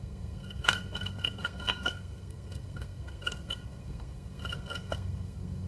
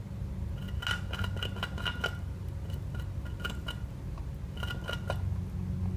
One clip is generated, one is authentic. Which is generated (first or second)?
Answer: first